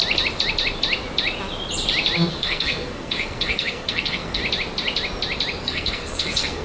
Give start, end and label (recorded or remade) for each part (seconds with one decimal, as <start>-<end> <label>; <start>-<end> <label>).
0.0-2.3 recorded; 2.3-4.4 remade; 4.4-5.6 recorded; 5.6-6.6 remade